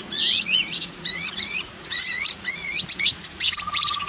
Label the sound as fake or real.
fake